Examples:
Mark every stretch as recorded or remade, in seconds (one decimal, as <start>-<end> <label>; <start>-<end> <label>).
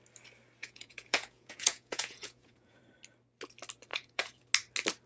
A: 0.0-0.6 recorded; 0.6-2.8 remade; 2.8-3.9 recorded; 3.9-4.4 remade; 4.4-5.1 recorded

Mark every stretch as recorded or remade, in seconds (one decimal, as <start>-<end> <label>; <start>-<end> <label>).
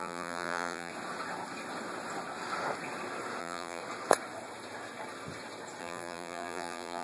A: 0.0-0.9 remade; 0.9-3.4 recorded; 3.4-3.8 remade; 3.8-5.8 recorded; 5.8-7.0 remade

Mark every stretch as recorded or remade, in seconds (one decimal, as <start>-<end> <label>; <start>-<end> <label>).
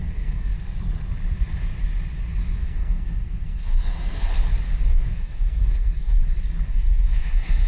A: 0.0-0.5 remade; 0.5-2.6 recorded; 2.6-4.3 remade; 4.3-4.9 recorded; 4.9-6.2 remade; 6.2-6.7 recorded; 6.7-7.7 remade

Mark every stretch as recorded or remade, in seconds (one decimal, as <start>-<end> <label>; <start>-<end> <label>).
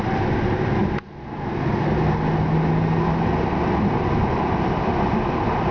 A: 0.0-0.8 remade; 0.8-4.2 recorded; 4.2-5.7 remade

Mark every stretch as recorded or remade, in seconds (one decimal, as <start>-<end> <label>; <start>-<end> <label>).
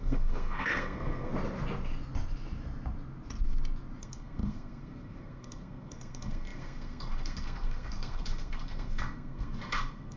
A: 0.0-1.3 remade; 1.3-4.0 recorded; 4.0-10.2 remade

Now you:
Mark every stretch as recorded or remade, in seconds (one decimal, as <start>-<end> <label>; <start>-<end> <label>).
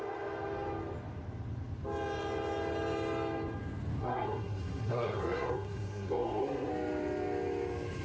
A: 0.0-4.0 recorded; 4.0-6.7 remade; 6.7-8.0 recorded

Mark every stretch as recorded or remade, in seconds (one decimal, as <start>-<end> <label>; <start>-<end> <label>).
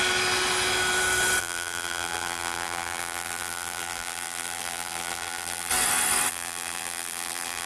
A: 0.0-1.4 recorded; 1.4-5.7 remade; 5.7-6.3 recorded; 6.3-7.7 remade